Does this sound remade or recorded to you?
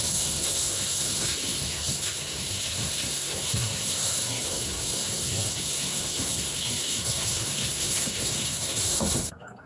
remade